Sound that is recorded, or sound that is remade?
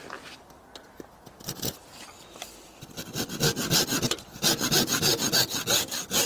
recorded